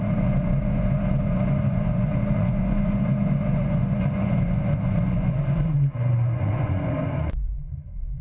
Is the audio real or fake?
fake